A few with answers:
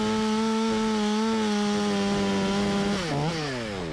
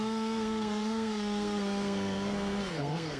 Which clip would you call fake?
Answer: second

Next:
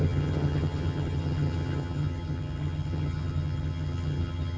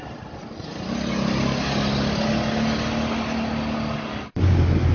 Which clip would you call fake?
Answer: first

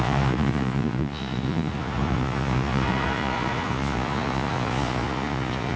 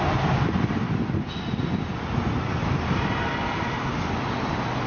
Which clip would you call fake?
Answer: first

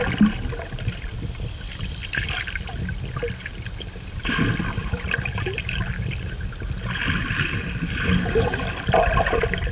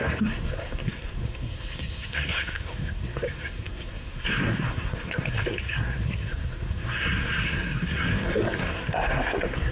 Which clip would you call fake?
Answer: second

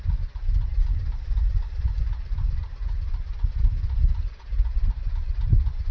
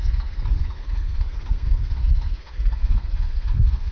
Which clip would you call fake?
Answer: second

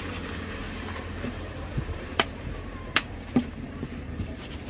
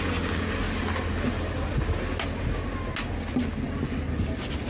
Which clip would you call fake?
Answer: first